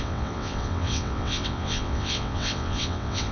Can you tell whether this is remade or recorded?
remade